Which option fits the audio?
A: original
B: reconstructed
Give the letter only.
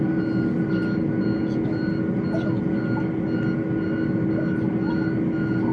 A